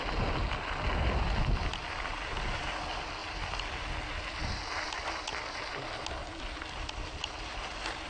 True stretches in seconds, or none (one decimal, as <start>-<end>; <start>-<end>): 0.0-8.1